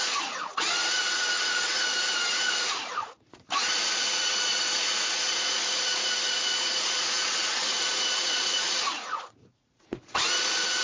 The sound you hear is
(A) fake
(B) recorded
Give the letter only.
A